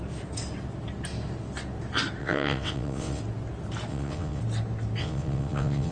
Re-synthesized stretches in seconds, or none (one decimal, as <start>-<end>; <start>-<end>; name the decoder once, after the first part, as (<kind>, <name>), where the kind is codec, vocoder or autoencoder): 2.2-3.2 (vocoder, WaveNeXt); 3.9-4.4; 5.0-5.9